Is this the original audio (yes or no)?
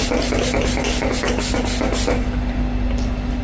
yes